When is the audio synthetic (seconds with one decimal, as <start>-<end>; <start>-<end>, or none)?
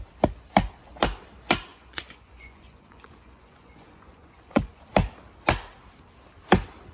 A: 1.7-4.8